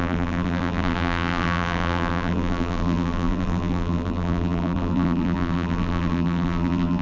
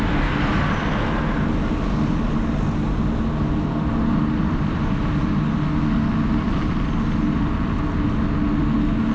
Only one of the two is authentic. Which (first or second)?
second